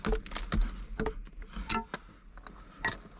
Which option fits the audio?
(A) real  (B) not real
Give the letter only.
A